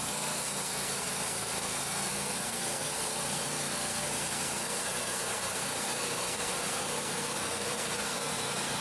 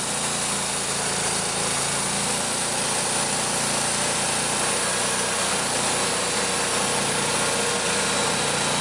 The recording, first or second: second